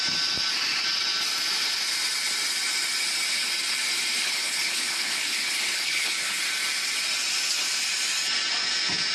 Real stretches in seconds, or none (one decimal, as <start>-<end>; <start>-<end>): 0.0-4.2; 6.4-9.1